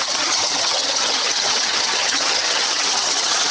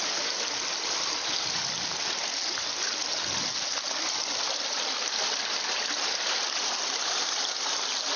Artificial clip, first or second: first